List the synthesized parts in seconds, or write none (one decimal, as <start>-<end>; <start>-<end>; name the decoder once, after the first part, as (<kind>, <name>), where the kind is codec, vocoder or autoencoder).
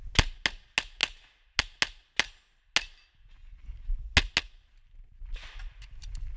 none